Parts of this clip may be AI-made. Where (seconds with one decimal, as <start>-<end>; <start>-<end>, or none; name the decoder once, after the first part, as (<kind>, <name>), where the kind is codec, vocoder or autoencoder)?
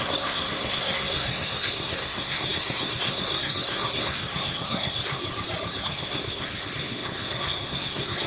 0.0-5.2 (codec, SNAC); 5.8-8.3